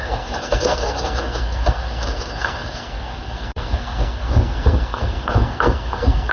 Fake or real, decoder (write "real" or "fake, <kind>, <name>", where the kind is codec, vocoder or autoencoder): fake, codec, SNAC